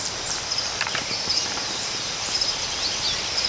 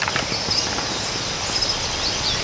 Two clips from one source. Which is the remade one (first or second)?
first